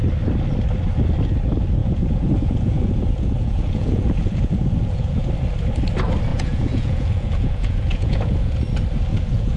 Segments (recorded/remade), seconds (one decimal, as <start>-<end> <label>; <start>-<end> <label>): 0.0-1.8 recorded; 1.8-5.3 remade; 5.3-6.3 recorded; 6.3-8.6 remade; 8.6-9.1 recorded; 9.1-9.6 remade